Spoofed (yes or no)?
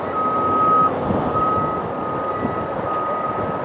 no